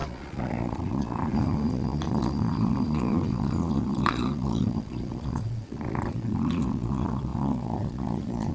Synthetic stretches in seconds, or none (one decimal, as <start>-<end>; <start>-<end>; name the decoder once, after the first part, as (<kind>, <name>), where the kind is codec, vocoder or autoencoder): 0.0-8.5 (vocoder, Vocos)